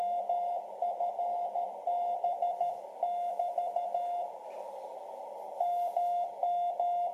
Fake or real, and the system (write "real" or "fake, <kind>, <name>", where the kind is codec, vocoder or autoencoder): real